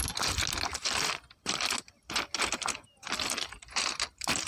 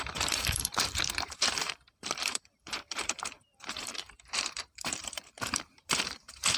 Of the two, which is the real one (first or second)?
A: first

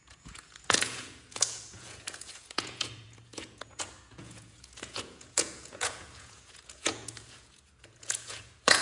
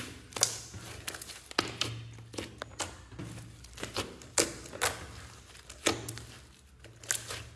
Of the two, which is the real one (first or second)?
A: second